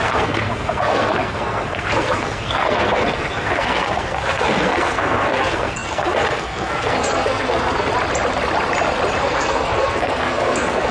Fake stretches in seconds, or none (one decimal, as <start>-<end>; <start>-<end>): 0.0-7.9; 9.2-10.9